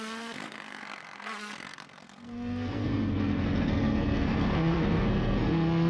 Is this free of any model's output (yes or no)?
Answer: no